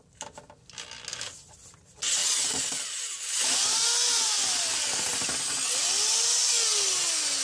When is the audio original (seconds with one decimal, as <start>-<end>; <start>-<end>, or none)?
0.0-7.4